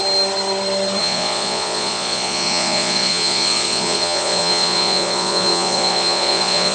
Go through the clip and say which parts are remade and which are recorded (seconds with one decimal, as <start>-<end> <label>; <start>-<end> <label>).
0.0-1.0 recorded; 1.0-6.7 remade